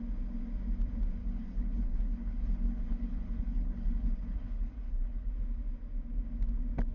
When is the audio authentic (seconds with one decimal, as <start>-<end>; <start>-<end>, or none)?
0.0-1.2; 5.3-6.9